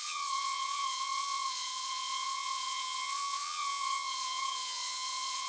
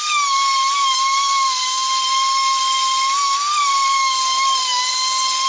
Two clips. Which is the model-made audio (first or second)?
first